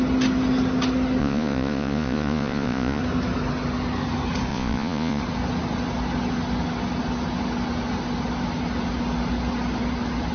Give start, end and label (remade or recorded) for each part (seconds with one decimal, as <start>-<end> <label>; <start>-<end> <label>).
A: 0.0-1.2 recorded; 1.2-3.0 remade; 3.0-4.5 recorded; 4.5-5.2 remade; 5.2-10.3 recorded